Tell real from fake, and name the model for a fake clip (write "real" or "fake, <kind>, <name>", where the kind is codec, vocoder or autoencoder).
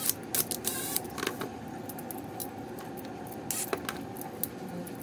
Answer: real